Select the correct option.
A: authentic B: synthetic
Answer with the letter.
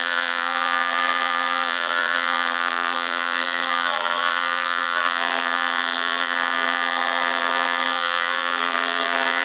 B